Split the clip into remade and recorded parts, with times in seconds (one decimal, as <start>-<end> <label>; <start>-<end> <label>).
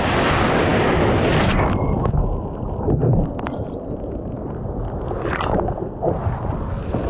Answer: 0.0-7.1 recorded